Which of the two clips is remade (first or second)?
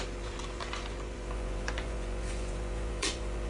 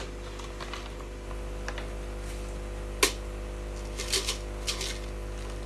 first